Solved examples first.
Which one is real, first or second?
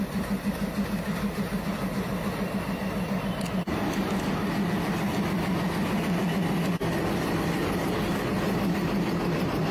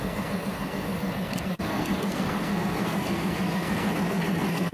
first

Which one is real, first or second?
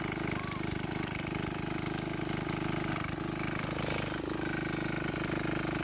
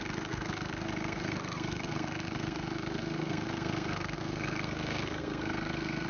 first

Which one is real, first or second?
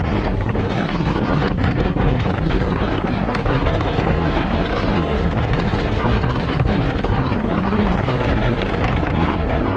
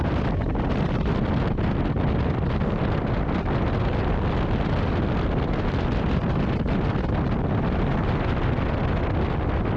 second